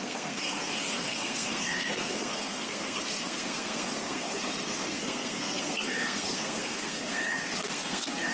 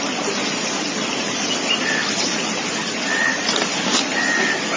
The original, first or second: second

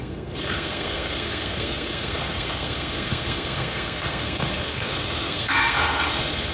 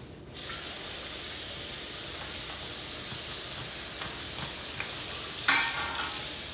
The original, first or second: second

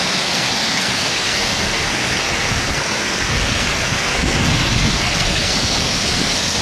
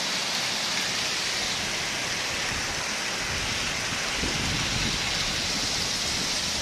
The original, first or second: second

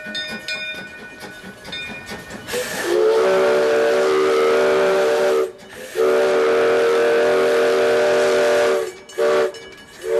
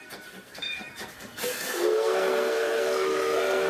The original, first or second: first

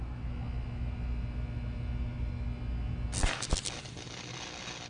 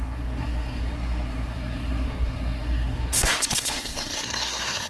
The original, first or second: first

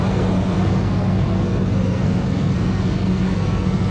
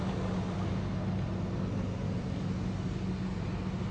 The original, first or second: second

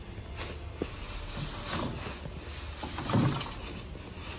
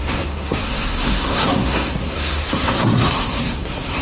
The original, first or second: first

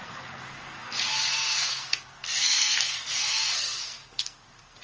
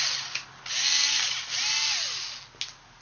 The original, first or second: second